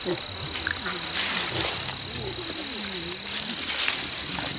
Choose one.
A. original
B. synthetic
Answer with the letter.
A